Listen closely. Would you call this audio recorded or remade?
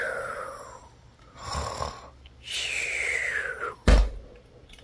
recorded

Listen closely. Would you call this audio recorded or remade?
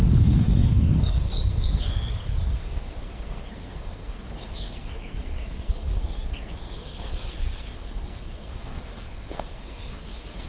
remade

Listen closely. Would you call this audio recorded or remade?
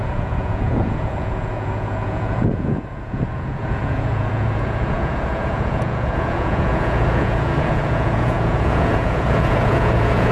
remade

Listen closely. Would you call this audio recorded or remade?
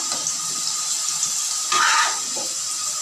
recorded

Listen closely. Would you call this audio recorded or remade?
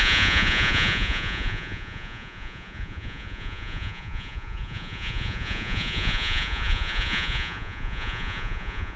remade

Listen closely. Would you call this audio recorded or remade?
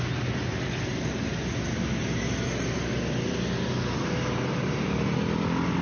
recorded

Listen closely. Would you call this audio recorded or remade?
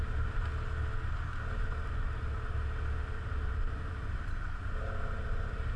recorded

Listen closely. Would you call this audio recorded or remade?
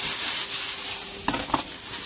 recorded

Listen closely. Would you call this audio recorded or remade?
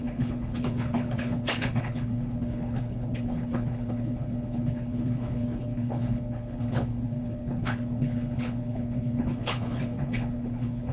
remade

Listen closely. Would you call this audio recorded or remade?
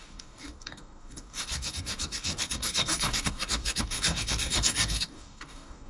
remade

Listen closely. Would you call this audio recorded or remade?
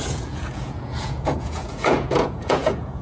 remade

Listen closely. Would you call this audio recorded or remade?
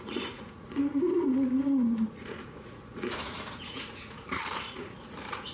remade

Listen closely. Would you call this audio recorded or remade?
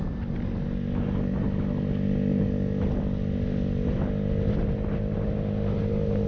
recorded